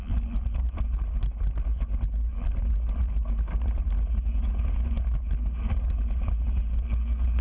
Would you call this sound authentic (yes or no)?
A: yes